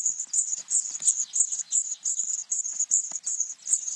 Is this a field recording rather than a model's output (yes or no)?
yes